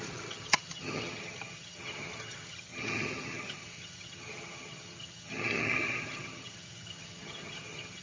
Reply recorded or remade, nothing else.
remade